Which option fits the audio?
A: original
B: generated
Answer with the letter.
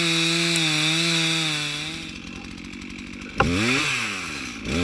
A